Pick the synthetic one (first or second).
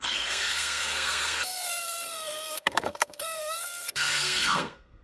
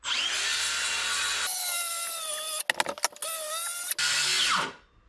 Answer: first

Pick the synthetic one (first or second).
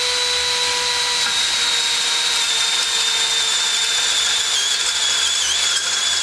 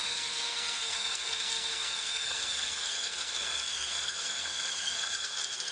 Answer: second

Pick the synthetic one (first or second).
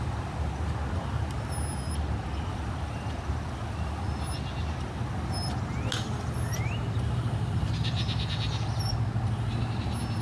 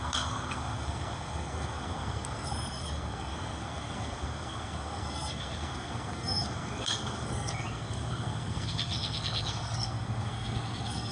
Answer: second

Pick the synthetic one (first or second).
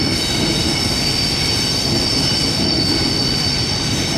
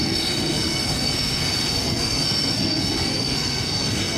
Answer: second